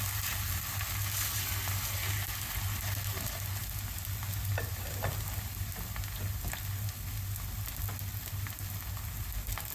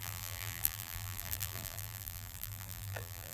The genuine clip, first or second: first